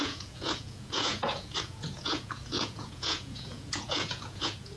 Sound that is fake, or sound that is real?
fake